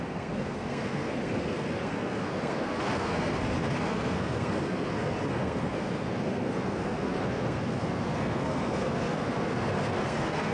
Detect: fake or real fake